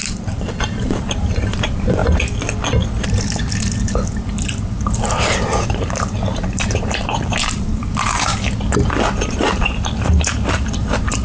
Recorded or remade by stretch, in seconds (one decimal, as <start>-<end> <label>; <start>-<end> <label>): 0.0-2.0 remade; 2.0-5.6 recorded; 5.6-7.8 remade; 7.8-9.0 recorded; 9.0-11.2 remade